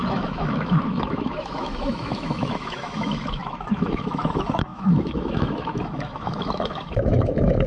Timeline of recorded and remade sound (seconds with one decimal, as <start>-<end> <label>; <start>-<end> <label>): 0.0-7.7 remade